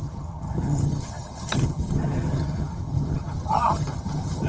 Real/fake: fake